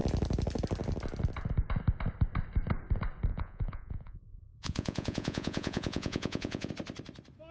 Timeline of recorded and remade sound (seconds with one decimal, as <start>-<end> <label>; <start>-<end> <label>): 0.0-3.3 recorded; 3.3-6.7 remade; 6.7-7.5 recorded